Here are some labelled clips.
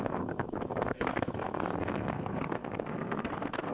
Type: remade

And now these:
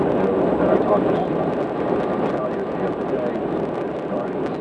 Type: recorded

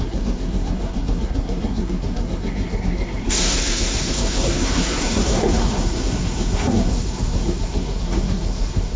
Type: remade